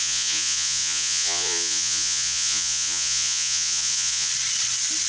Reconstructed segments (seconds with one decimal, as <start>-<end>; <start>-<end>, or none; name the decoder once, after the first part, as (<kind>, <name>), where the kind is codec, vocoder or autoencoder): 0.0-4.3 (vocoder, Vocos)